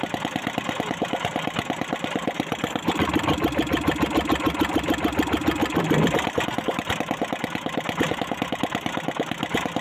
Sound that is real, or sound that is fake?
real